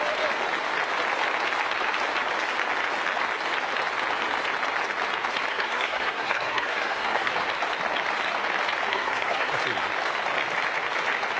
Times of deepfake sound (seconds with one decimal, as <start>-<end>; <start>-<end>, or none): 5.5-7.3; 8.9-9.5